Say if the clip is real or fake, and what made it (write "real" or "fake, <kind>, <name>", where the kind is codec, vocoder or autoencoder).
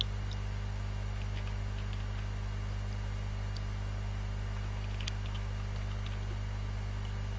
real